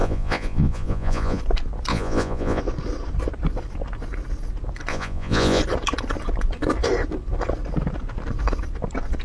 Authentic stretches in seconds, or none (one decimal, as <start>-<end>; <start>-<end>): 1.4-1.9; 2.6-4.9; 5.6-9.2